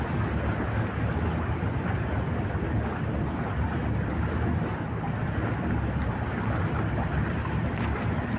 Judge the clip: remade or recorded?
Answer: recorded